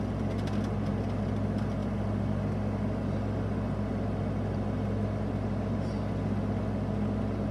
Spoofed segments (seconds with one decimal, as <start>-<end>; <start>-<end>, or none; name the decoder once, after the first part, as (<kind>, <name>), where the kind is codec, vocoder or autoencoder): none